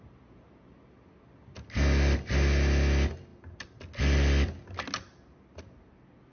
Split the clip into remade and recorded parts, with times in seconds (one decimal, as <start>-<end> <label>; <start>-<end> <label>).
0.0-6.3 recorded